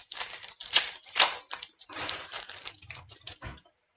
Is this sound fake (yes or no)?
yes